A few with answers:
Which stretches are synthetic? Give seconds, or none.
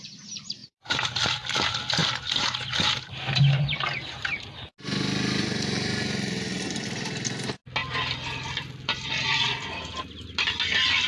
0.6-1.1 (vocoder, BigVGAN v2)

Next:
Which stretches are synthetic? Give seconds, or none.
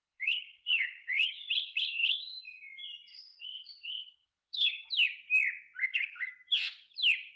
0.0-2.4 (codec, HILCodec); 3.1-4.9; 5.8-6.3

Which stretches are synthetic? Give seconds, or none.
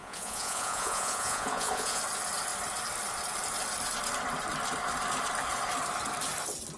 0.0-2.0 (vocoder, Vocos)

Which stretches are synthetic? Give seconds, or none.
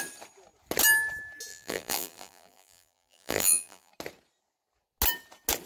1.5-3.9 (vocoder, BigVGAN v2)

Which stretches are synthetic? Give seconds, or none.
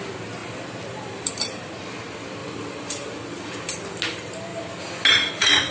0.4-1.7 (vocoder, BigVGAN v2); 2.4-3.1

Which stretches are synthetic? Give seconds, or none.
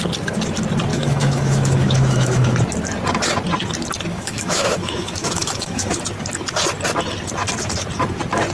0.9-2.5 (autoencoder, DAC-VAE); 4.1-6.0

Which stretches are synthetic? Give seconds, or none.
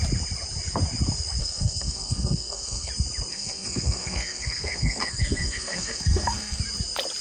1.4-2.9 (codec, SNAC); 3.3-6.6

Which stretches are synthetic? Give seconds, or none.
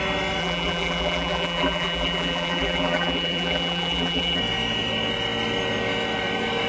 0.4-4.4 (vocoder, BigVGAN v2)